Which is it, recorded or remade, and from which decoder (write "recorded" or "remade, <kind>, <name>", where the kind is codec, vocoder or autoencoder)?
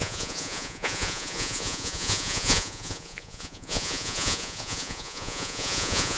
remade, vocoder, Vocos